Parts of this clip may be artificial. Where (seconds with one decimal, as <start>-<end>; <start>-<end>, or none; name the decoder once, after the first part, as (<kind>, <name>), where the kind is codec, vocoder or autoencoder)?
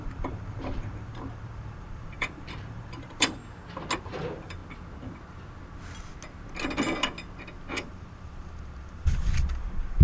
0.0-3.4 (vocoder, BigVGAN v2); 4.0-4.6; 7.7-10.0